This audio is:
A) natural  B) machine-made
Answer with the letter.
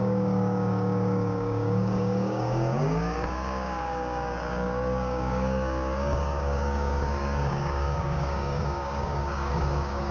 B